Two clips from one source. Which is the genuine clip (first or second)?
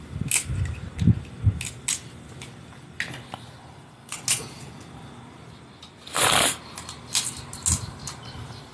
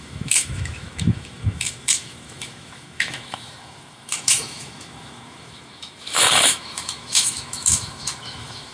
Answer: first